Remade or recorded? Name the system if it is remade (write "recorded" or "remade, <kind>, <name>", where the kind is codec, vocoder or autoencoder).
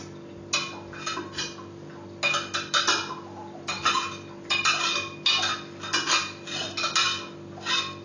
recorded